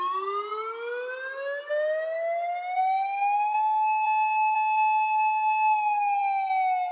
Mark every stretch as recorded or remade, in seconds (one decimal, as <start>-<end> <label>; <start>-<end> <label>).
0.0-6.9 recorded